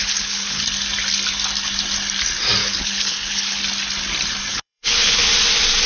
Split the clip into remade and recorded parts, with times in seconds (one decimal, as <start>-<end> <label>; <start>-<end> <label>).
0.0-0.6 remade; 0.6-2.6 recorded; 2.6-3.6 remade; 3.6-4.5 recorded; 4.5-5.3 remade; 5.3-5.9 recorded